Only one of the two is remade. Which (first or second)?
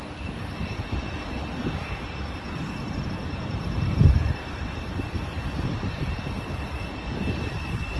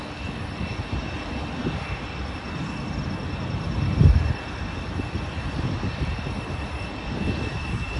first